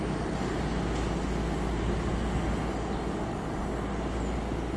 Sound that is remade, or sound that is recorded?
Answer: recorded